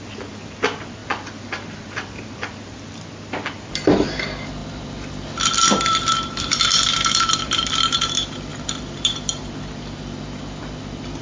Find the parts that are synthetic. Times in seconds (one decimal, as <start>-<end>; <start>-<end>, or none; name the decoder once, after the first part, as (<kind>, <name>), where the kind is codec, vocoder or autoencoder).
1.0-3.1 (vocoder, BigVGAN v2); 4.6-7.7; 8.5-9.6